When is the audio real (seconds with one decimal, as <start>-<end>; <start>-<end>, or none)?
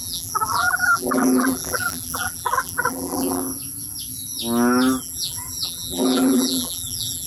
3.4-5.0